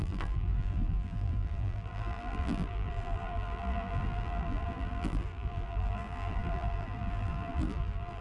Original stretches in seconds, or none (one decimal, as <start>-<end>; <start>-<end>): none

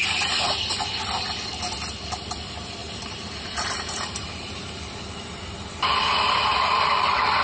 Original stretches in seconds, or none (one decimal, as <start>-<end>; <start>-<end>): 0.0-2.8; 5.4-7.4